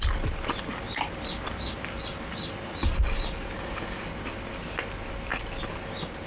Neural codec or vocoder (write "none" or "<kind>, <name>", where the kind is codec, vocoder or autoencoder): none